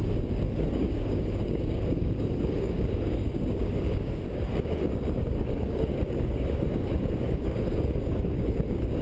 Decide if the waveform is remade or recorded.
remade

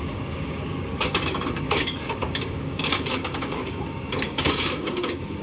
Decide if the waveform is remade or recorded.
remade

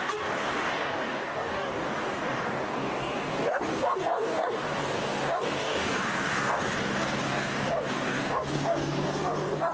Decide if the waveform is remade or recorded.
remade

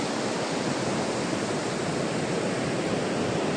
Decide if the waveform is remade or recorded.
recorded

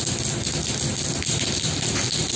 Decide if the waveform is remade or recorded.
recorded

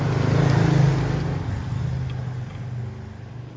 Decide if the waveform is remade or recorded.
recorded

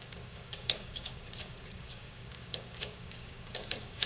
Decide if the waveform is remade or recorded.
remade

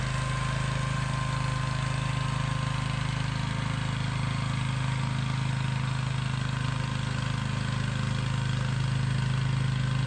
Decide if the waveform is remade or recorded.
recorded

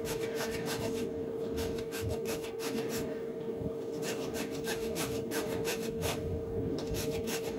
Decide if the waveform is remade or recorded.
remade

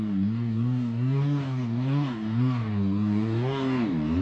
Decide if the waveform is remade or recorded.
remade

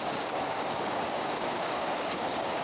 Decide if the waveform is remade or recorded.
remade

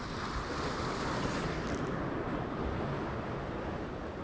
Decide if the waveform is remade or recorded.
recorded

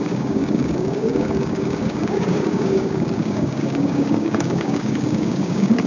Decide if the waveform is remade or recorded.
remade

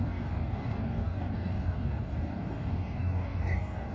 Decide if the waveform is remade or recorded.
remade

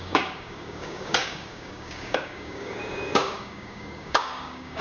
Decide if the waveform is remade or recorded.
remade